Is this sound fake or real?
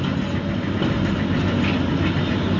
real